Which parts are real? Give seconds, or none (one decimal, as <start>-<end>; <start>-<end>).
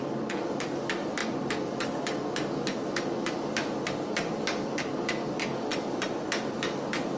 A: 0.0-7.2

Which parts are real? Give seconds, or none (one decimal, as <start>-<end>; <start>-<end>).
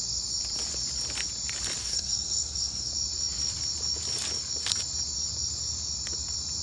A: 0.0-1.8; 2.9-6.6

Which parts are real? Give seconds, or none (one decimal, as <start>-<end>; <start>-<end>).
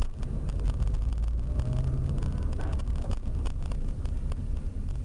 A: 0.0-5.0